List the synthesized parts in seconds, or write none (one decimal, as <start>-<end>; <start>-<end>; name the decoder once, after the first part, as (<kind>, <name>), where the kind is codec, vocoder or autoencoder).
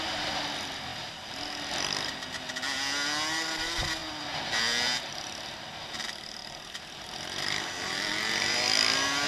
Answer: 0.9-1.4 (vocoder, BigVGAN v2); 6.4-7.0